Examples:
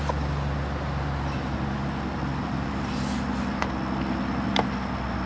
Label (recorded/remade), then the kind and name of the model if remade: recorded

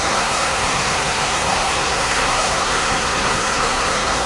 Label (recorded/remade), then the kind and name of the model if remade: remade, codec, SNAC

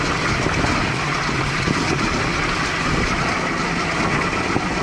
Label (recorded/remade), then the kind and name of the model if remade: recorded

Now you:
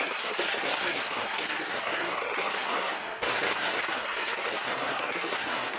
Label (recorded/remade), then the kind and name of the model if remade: remade, codec, SNAC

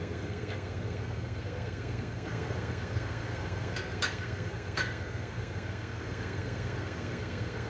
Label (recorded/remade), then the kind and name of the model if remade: remade, codec, SNAC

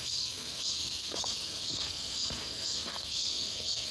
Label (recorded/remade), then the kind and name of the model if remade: remade, codec, SNAC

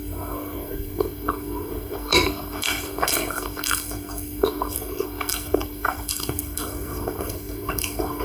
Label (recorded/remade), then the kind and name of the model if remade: remade, codec, SNAC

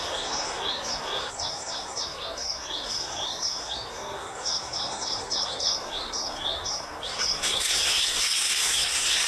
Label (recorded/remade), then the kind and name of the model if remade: remade, codec, SNAC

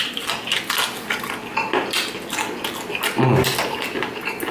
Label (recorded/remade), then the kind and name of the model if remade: recorded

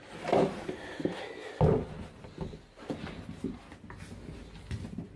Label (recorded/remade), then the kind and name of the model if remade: recorded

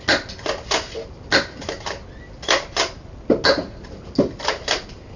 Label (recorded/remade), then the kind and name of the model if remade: recorded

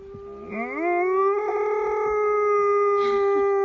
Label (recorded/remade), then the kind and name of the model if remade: recorded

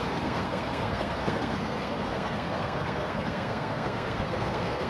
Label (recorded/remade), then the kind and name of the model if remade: remade, codec, SNAC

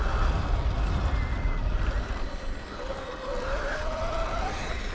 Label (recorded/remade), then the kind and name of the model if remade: recorded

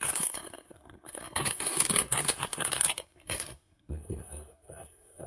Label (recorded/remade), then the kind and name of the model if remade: remade, codec, SNAC